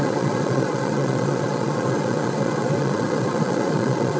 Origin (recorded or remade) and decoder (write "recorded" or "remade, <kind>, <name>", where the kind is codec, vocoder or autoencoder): remade, vocoder, Vocos